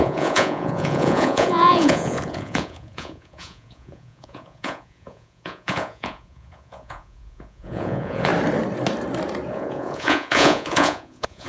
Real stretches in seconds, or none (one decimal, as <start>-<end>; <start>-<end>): 8.3-9.5